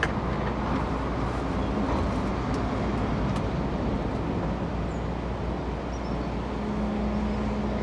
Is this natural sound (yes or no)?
yes